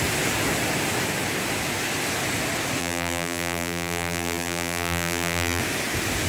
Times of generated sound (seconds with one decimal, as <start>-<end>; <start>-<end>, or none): 2.8-5.6

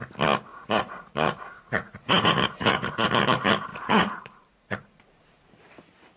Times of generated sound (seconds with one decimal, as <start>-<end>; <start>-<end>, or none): 0.5-3.1; 3.7-5.5

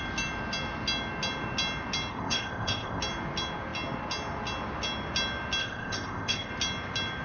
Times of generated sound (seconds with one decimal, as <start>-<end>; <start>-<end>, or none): 2.1-3.0; 5.6-6.5

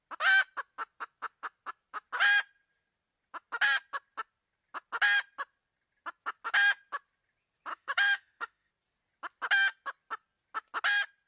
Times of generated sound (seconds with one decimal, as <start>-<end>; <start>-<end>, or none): 7.7-8.7

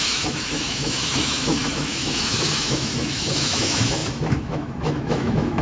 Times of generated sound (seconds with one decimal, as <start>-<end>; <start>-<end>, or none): 0.0-5.6